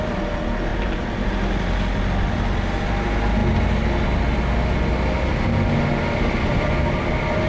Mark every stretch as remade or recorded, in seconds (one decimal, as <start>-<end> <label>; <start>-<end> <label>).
0.0-0.7 recorded; 0.7-1.3 remade; 1.3-7.5 recorded